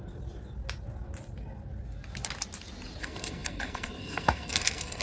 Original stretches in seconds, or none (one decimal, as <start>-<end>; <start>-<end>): 0.0-3.0